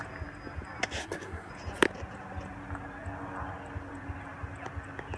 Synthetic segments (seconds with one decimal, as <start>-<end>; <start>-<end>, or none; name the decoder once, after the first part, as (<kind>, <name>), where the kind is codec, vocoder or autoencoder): 1.0-1.5 (codec, SNAC)